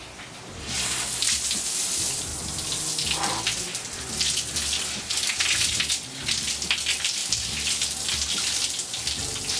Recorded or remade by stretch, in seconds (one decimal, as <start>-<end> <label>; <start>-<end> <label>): 0.0-9.6 recorded